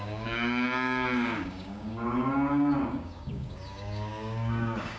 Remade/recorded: remade